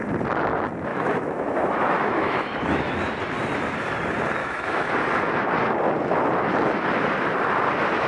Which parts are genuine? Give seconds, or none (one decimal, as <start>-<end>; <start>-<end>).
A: 0.0-0.9; 3.0-4.4; 4.9-8.1